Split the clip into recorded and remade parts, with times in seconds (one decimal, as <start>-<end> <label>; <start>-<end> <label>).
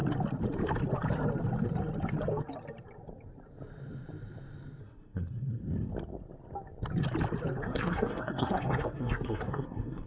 0.0-4.8 recorded; 4.8-5.6 remade; 5.6-7.6 recorded; 7.6-10.1 remade